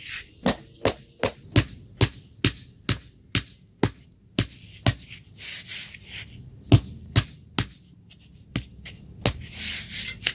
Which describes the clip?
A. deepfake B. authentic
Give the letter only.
B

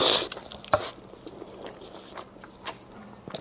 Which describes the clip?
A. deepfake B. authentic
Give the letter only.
B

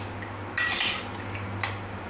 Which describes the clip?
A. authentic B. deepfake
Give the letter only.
A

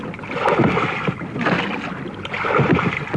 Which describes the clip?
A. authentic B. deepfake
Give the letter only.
A